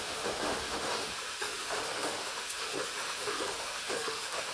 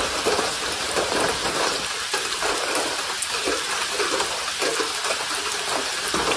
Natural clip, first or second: second